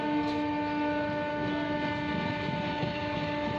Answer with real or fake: real